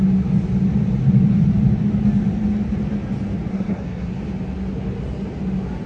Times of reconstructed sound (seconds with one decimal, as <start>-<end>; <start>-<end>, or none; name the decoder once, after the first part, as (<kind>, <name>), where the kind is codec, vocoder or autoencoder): 3.5-4.2 (codec, SNAC)